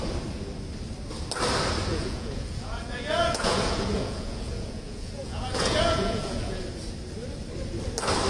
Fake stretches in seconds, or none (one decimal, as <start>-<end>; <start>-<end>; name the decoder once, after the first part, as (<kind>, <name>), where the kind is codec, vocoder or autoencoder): 1.9-6.6 (vocoder, Vocos)